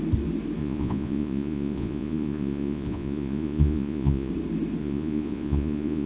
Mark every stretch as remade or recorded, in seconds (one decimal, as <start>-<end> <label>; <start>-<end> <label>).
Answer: 0.0-0.6 recorded; 0.6-4.3 remade; 4.3-4.8 recorded; 4.8-6.1 remade

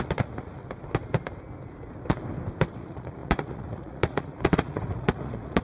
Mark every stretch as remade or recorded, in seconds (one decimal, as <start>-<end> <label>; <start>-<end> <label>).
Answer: 0.0-0.6 remade; 0.6-2.7 recorded; 2.7-5.6 remade

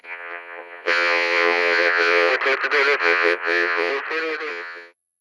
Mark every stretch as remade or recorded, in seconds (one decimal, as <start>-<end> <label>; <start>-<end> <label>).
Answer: 0.0-2.3 remade; 2.3-3.0 recorded; 3.0-3.9 remade; 3.9-4.5 recorded; 4.5-5.2 remade

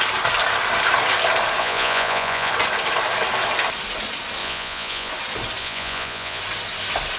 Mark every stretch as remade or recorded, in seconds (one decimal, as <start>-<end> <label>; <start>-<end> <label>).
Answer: 0.0-1.6 recorded; 1.6-2.5 remade; 2.5-4.4 recorded; 4.4-5.1 remade; 5.1-5.6 recorded; 5.6-6.4 remade; 6.4-7.2 recorded

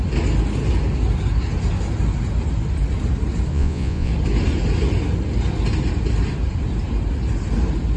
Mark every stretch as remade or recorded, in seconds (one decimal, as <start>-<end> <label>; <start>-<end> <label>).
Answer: 0.0-3.5 recorded; 3.5-4.1 remade; 4.1-8.0 recorded